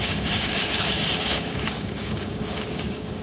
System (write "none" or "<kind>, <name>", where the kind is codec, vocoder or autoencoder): codec, DAC